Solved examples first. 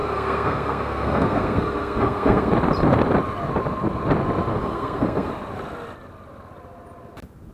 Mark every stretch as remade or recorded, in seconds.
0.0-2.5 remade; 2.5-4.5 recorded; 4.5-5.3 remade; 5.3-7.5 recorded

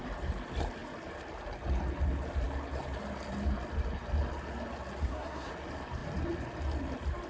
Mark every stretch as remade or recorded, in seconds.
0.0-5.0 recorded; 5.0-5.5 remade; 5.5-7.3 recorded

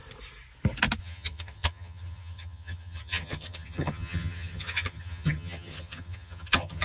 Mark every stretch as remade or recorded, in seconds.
0.0-1.0 recorded; 1.0-6.8 remade

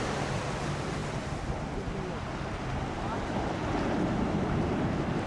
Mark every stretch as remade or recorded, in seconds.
0.0-5.3 recorded

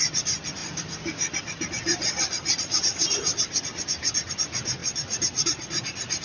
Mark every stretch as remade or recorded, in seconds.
0.0-0.6 recorded; 0.6-2.6 remade; 2.6-6.2 recorded